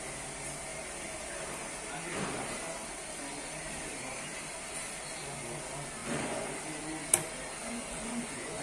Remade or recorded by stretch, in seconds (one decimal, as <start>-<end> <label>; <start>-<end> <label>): 0.0-6.0 recorded; 6.0-6.6 remade; 6.6-7.6 recorded; 7.6-8.6 remade